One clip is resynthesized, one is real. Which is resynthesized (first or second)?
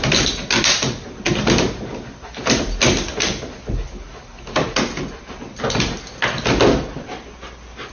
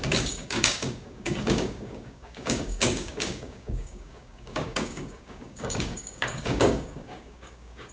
second